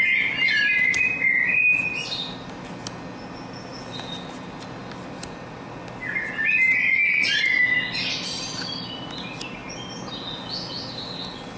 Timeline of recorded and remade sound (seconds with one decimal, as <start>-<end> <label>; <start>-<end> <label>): 0.0-11.6 recorded